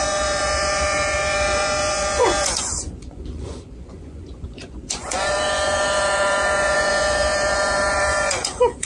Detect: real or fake fake